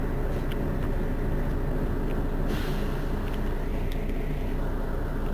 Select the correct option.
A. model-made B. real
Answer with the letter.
B